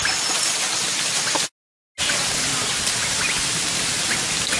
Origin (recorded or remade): recorded